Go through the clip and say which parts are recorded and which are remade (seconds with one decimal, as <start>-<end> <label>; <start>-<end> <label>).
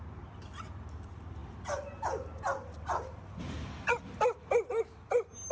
0.0-5.5 recorded